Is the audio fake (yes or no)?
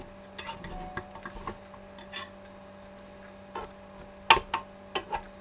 no